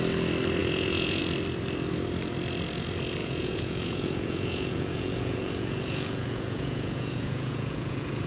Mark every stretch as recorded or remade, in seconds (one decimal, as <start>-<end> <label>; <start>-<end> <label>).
0.0-0.6 recorded; 0.6-1.2 remade; 1.2-3.2 recorded; 3.2-8.3 remade